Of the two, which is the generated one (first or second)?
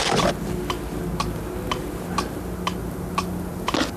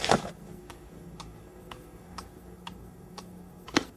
second